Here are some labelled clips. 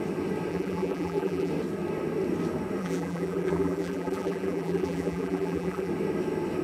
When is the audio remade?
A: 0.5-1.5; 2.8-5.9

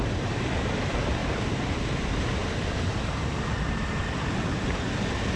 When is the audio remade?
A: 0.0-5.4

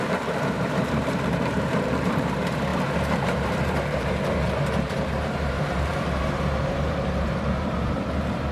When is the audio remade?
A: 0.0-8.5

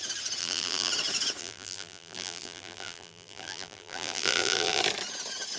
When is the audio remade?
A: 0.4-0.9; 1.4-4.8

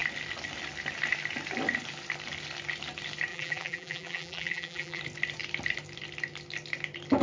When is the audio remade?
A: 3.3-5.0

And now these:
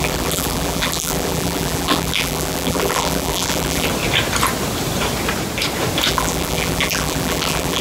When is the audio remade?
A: 0.0-3.9; 6.1-7.8

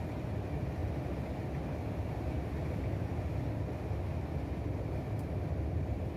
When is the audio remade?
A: 0.8-1.4

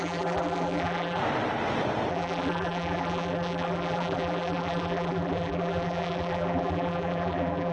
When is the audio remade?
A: 0.0-1.2; 2.1-7.7